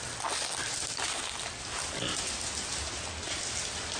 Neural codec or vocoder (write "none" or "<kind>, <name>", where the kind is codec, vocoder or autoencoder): none